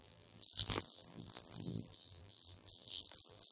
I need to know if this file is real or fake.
fake